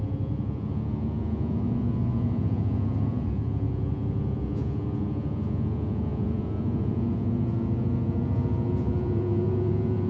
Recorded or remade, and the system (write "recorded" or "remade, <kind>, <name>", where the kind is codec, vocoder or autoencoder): remade, vocoder, Vocos